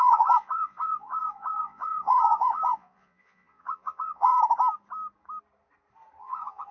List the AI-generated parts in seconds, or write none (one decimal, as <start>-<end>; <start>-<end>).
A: 0.0-4.3; 6.2-6.7

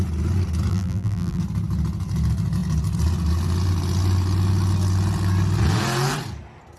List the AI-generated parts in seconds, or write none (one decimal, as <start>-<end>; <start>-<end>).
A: 0.7-1.4

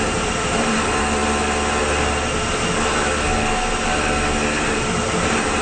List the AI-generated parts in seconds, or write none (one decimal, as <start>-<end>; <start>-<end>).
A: 0.0-1.2; 4.6-5.6

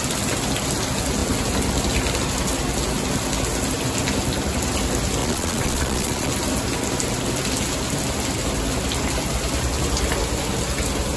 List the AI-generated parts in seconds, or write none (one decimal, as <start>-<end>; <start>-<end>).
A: 5.2-6.3